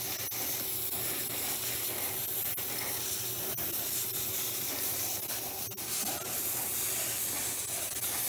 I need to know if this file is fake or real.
real